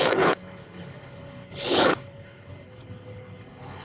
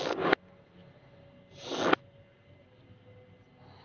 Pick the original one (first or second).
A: second